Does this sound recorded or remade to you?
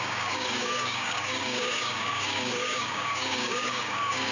remade